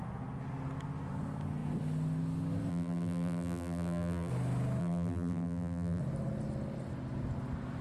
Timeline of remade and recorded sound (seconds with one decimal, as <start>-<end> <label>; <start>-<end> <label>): 0.0-2.7 recorded; 2.7-4.3 remade; 4.3-4.8 recorded; 4.8-6.0 remade; 6.0-7.8 recorded